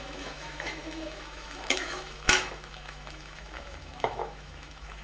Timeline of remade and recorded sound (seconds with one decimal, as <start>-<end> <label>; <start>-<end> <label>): 0.0-5.0 remade